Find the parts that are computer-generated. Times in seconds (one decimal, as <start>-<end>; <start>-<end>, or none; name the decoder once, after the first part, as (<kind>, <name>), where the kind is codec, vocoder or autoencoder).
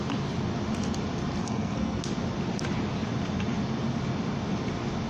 1.4-2.0 (codec, SNAC)